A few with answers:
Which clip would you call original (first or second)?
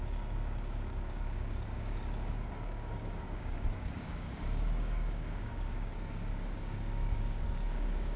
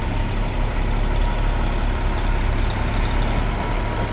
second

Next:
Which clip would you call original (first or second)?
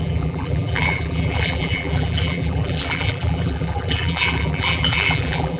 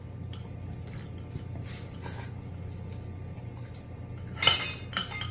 second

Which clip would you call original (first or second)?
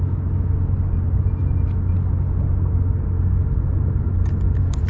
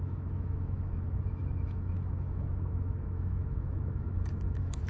first